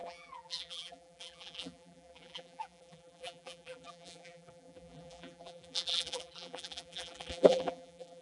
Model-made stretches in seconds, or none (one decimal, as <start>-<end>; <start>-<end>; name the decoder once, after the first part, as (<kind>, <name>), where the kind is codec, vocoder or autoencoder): 0.0-8.2 (vocoder, BigVGAN v2)